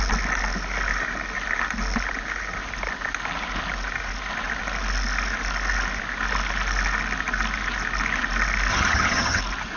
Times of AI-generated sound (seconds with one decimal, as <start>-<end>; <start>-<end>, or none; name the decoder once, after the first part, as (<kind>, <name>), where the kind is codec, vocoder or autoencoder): 8.7-9.4 (vocoder, HiFi-GAN)

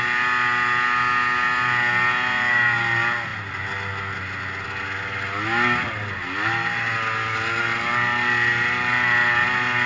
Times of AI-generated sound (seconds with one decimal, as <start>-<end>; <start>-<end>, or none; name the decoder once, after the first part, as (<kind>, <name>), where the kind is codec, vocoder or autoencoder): none

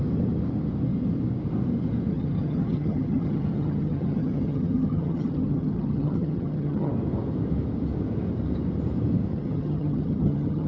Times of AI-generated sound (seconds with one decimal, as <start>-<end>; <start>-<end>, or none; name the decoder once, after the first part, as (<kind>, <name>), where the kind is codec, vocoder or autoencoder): 2.1-6.9 (vocoder, HiFi-GAN); 9.3-10.7

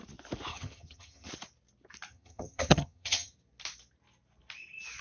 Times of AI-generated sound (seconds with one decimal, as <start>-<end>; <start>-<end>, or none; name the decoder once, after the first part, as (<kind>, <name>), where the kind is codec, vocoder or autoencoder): 0.5-1.3 (vocoder, HiFi-GAN); 2.1-3.3

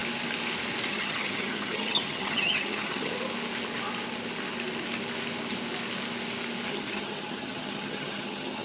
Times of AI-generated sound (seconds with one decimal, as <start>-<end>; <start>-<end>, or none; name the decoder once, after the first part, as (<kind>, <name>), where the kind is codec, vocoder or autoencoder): 0.9-3.1 (vocoder, HiFi-GAN); 6.7-8.6

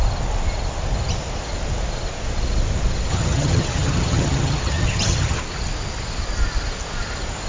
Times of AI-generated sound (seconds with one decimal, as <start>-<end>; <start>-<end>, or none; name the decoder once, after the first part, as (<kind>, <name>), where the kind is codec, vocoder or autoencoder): 3.1-5.4 (vocoder, HiFi-GAN)